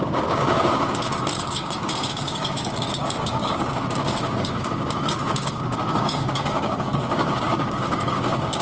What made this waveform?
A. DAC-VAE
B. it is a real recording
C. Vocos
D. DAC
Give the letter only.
D